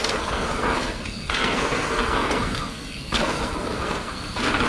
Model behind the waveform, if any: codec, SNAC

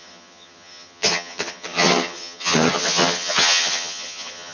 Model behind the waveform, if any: vocoder, HiFi-GAN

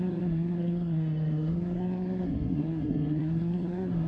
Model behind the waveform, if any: codec, SNAC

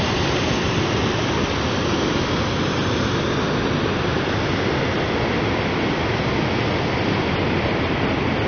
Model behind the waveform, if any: none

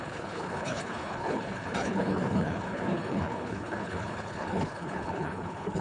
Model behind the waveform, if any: codec, HILCodec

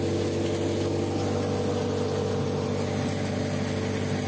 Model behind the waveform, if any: none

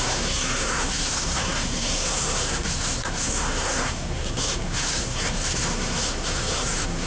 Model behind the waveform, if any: codec, SNAC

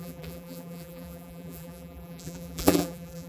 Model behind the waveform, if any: vocoder, BigVGAN v2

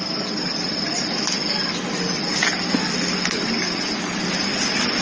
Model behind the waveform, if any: none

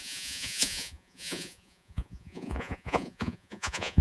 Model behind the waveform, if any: vocoder, Vocos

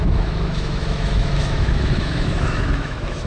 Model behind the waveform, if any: autoencoder, DAC-VAE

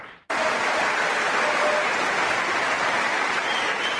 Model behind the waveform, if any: none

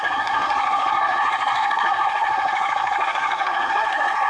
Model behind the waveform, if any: codec, SNAC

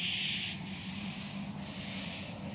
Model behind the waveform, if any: none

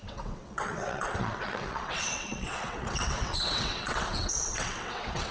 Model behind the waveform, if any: vocoder, WaveNeXt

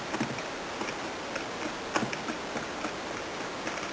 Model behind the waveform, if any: none